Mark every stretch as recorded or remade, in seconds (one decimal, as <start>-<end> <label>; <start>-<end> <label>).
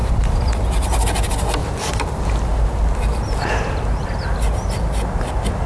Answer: 0.0-1.0 remade; 1.0-1.6 recorded; 1.6-4.7 remade; 4.7-5.7 recorded